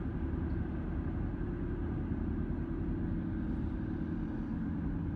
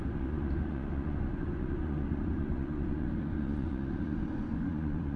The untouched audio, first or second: first